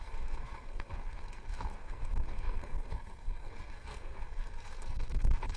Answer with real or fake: fake